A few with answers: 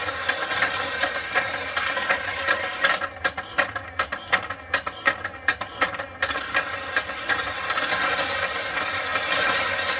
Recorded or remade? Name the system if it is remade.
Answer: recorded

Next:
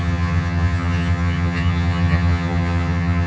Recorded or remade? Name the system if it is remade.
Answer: remade, vocoder, HiFi-GAN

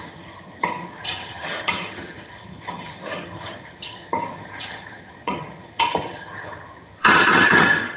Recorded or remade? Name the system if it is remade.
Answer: remade, vocoder, HiFi-GAN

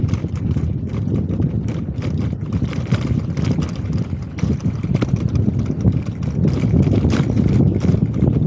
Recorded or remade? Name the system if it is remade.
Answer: recorded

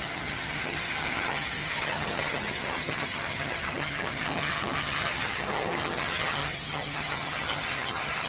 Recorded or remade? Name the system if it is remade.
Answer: remade, vocoder, HiFi-GAN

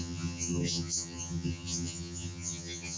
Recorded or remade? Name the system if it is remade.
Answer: remade, vocoder, HiFi-GAN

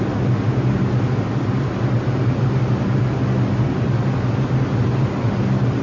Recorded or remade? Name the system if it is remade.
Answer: recorded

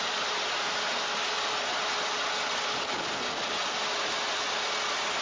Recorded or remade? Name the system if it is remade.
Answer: recorded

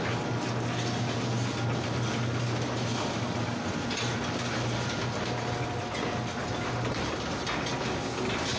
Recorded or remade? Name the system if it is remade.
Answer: recorded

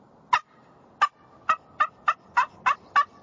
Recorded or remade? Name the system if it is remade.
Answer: recorded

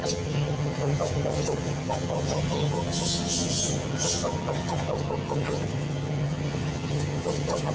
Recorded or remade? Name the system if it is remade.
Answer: remade, vocoder, HiFi-GAN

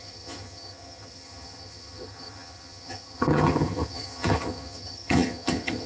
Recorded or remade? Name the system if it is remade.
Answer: remade, vocoder, HiFi-GAN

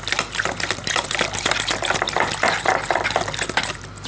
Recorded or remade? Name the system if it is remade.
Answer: recorded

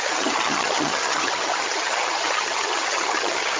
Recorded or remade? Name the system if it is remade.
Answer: remade, vocoder, HiFi-GAN